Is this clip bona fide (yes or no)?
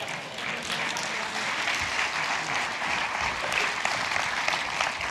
yes